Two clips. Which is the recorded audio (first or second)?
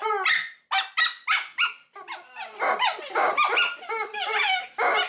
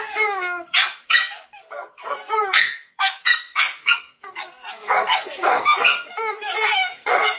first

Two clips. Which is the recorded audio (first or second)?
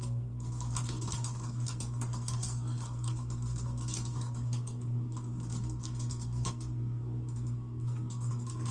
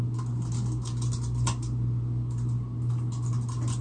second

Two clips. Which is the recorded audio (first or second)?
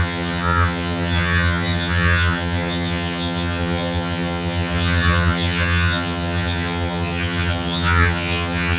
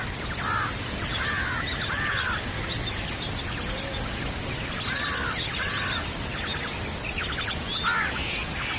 second